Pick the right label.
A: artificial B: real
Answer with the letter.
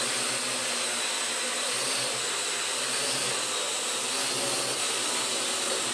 B